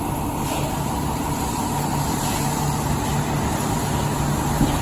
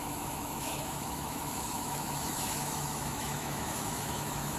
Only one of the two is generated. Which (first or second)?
second